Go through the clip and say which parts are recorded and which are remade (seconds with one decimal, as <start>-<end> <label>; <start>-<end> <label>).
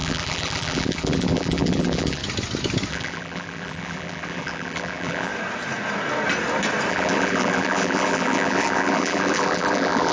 0.0-2.2 remade; 2.2-2.9 recorded; 2.9-5.3 remade; 5.3-6.9 recorded; 6.9-10.1 remade